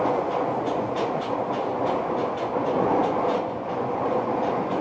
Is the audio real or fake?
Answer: fake